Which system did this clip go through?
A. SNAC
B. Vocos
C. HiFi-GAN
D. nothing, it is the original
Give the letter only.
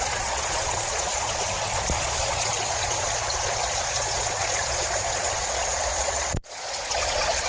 B